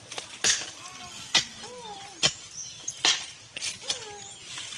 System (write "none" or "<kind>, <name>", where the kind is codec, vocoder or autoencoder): none